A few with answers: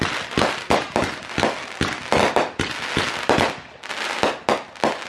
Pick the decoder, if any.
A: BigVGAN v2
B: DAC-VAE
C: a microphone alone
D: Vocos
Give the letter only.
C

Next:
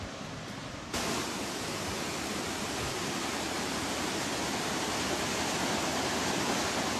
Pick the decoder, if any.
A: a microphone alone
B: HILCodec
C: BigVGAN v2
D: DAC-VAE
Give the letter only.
C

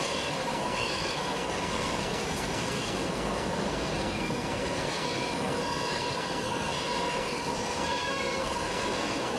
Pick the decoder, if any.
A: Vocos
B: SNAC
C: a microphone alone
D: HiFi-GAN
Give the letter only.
B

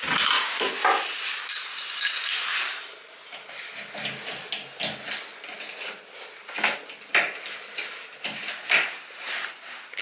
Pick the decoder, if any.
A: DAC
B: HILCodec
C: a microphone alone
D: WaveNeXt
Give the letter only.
C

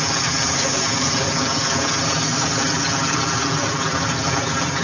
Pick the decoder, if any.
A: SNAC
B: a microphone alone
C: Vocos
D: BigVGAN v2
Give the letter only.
B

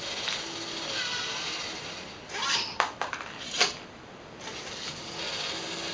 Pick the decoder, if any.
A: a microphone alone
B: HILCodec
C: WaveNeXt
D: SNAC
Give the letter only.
A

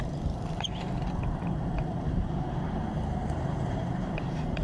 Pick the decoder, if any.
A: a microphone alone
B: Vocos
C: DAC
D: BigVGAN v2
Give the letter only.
D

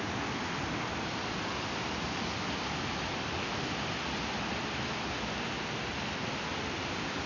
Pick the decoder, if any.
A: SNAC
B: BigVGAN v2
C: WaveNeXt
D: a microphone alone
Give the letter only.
D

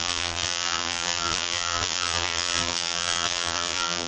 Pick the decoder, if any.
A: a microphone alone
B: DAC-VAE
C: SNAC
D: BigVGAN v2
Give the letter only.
D